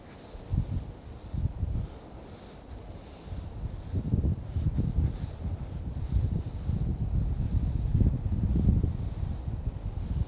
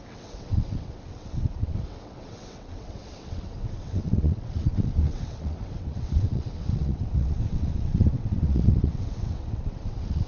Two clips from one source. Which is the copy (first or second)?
second